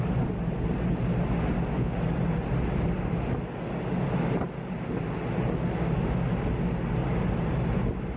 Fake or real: real